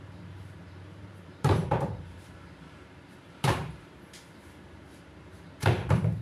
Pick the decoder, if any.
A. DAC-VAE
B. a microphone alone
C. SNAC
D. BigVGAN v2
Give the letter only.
D